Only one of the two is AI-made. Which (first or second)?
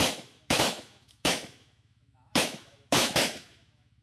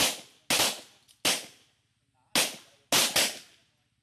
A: first